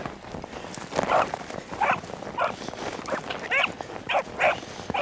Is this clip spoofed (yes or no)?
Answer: no